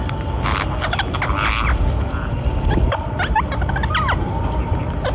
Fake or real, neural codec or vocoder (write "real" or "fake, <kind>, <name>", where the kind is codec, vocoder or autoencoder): real